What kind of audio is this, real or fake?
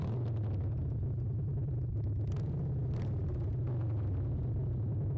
real